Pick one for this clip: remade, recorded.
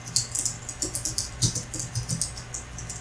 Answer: recorded